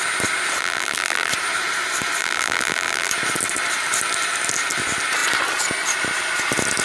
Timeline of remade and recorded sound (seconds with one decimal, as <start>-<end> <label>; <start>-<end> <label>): 0.0-0.6 recorded; 0.6-1.3 remade; 1.3-2.2 recorded; 2.2-3.1 remade; 3.1-6.8 recorded

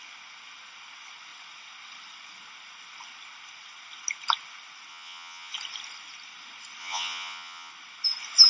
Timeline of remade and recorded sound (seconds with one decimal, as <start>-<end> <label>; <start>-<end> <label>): 0.0-4.9 recorded; 4.9-5.5 remade; 5.5-6.8 recorded; 6.8-7.7 remade; 7.7-8.5 recorded

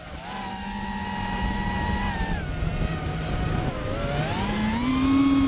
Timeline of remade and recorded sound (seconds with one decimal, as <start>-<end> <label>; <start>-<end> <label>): 0.0-5.5 recorded

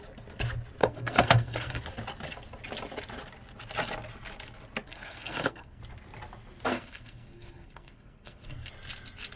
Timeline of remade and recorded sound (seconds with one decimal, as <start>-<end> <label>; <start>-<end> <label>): 0.0-0.8 recorded; 0.8-1.8 remade; 1.8-4.9 recorded; 4.9-5.8 remade; 5.8-6.7 recorded; 6.7-8.7 remade; 8.7-9.4 recorded

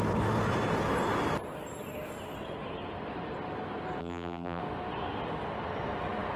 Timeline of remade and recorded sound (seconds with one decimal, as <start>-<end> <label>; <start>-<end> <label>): 0.0-4.0 recorded; 4.0-4.6 remade; 4.6-6.4 recorded

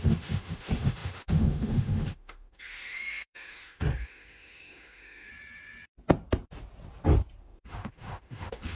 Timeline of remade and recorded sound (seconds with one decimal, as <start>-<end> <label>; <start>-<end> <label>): 0.0-5.3 remade; 5.3-7.4 recorded; 7.4-8.8 remade